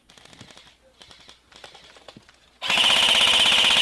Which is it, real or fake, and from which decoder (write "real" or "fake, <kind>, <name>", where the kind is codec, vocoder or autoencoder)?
real